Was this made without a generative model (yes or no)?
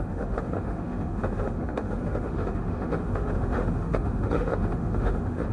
no